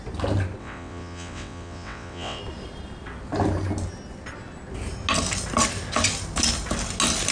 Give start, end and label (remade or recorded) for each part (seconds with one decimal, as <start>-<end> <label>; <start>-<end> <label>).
0.0-0.6 recorded; 0.6-2.4 remade; 2.4-7.3 recorded